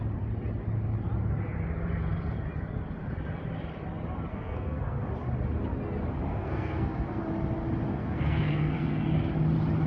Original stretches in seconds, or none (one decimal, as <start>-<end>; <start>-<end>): 0.0-4.3; 5.0-6.3; 7.2-7.9; 9.1-9.9